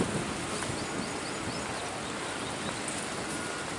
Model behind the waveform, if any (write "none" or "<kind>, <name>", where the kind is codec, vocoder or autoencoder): none